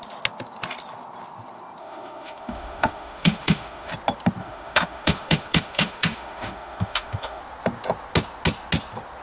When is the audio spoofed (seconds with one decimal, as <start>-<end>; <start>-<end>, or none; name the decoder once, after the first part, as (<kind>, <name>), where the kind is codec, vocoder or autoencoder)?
1.8-3.9 (autoencoder, DAC-VAE); 4.4-7.4